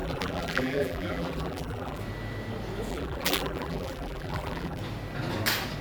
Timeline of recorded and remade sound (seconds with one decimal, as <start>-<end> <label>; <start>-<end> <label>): 0.0-2.0 remade; 2.0-2.9 recorded; 2.9-4.8 remade; 4.8-5.8 recorded